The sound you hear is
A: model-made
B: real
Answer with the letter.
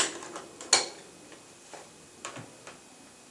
B